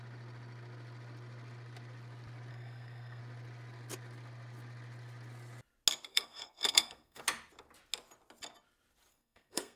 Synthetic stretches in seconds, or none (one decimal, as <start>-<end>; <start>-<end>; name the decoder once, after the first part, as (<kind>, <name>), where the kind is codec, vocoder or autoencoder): 2.5-3.2 (codec, SNAC); 6.1-7.2; 9.1-9.8